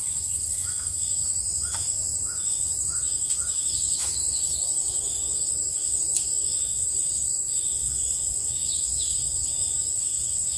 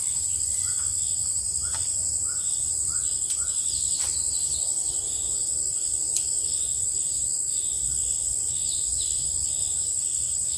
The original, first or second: second